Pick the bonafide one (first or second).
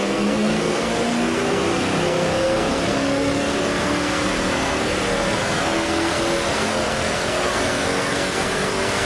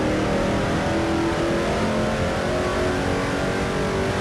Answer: second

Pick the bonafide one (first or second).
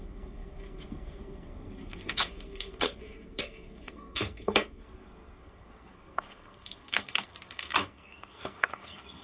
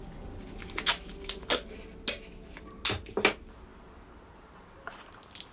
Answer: second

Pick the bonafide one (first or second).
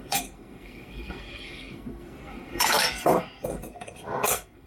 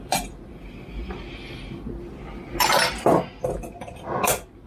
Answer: second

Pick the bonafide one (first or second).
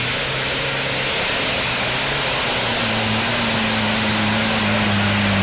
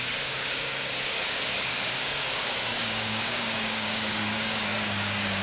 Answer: first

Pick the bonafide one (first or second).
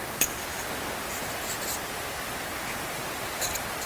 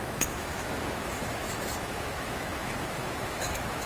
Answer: first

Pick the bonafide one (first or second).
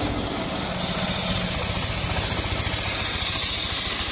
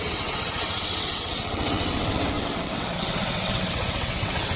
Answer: first